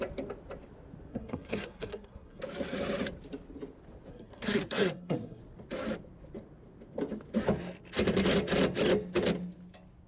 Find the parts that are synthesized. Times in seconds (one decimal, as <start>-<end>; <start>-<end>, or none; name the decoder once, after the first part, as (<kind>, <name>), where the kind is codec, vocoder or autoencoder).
1.1-2.4 (codec, SNAC); 4.1-5.4